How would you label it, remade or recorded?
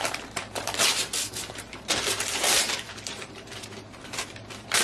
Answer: remade